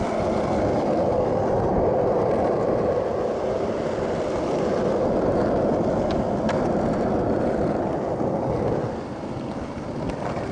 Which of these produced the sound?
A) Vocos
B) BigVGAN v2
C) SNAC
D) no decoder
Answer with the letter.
D